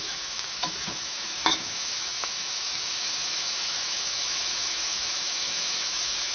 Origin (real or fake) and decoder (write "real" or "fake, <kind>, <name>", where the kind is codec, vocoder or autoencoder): fake, autoencoder, DAC-VAE